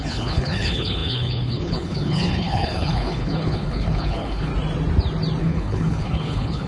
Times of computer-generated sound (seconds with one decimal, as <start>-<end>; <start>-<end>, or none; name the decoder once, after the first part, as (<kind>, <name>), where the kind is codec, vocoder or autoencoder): 0.0-4.5 (codec, HILCodec); 5.4-6.7